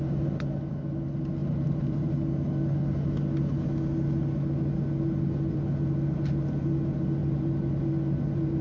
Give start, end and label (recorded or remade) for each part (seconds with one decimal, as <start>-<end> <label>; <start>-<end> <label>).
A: 0.0-1.4 recorded; 1.4-2.1 remade; 2.1-8.6 recorded